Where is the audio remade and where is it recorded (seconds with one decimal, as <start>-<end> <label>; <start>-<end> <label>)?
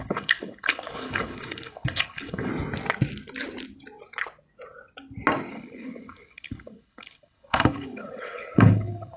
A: 0.0-2.5 remade; 2.5-5.5 recorded; 5.5-9.2 remade